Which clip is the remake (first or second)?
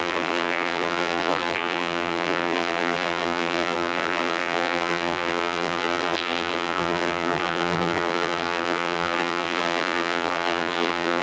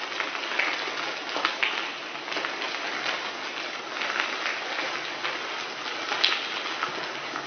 first